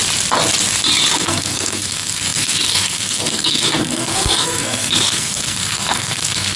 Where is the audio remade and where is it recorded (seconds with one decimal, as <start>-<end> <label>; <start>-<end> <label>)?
0.0-1.1 recorded; 1.1-6.6 remade